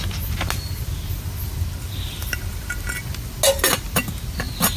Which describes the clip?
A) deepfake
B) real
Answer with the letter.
B